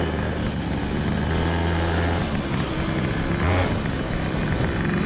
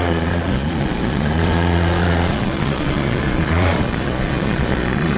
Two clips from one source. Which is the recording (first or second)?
first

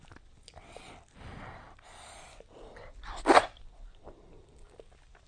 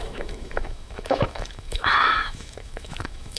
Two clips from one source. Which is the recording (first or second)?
first